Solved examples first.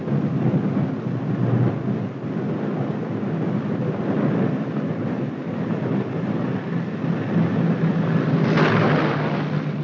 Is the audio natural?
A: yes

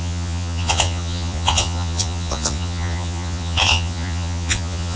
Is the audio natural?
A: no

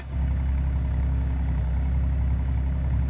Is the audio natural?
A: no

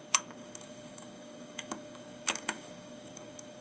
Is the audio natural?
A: no